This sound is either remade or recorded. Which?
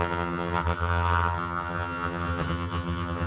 remade